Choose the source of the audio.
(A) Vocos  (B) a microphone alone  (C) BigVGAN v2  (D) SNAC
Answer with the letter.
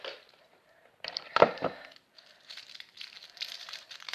C